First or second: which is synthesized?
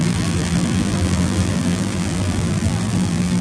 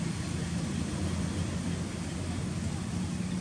first